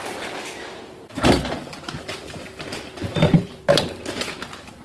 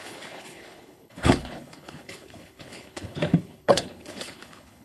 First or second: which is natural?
first